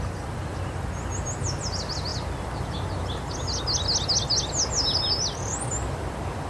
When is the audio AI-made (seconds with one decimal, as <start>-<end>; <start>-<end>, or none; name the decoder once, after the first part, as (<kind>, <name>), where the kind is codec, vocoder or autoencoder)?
none